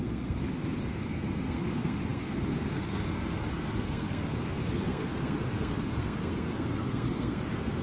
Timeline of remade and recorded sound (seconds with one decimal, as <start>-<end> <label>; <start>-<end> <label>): 0.0-7.8 remade